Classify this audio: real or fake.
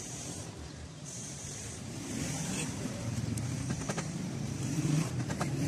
fake